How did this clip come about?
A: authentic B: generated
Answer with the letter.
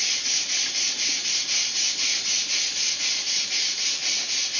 A